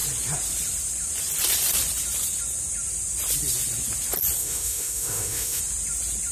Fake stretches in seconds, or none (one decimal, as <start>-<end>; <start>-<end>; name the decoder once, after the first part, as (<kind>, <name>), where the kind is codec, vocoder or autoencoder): 4.4-5.6 (autoencoder, DAC-VAE)